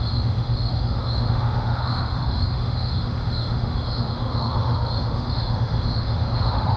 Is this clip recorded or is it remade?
remade